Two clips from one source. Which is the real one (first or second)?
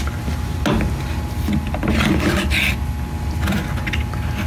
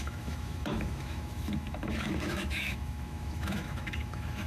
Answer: first